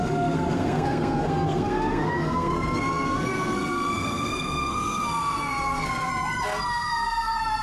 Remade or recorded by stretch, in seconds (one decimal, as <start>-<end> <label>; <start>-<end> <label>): 0.0-6.1 remade; 6.1-6.7 recorded; 6.7-7.6 remade